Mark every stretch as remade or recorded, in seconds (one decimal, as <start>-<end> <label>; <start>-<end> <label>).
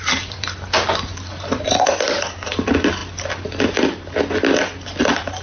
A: 0.0-3.0 remade; 3.0-4.9 recorded; 4.9-5.4 remade